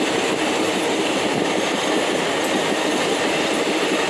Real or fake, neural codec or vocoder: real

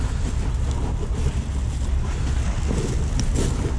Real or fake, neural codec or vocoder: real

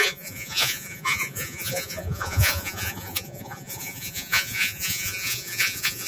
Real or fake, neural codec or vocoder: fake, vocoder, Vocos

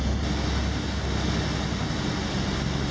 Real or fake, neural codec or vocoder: real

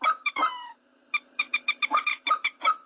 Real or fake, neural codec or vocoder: fake, vocoder, BigVGAN v2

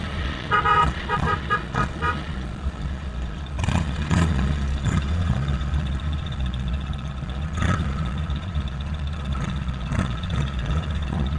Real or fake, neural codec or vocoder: fake, vocoder, Vocos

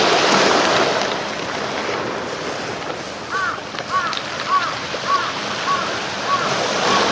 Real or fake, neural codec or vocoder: real